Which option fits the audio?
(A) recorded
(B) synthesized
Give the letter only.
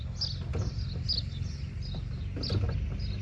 A